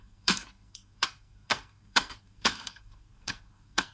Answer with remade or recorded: remade